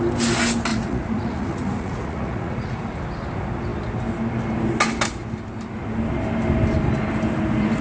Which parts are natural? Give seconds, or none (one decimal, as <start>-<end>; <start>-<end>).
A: 0.0-0.7; 3.0-7.8